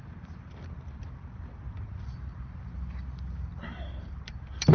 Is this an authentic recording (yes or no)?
yes